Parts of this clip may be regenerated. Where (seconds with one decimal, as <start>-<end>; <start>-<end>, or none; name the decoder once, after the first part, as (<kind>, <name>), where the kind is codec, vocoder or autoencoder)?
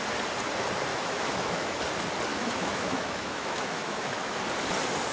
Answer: 0.9-1.8 (autoencoder, DAC-VAE); 2.3-4.4